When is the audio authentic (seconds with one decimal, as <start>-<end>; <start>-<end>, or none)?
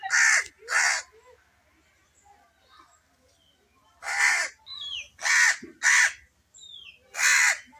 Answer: 0.0-7.8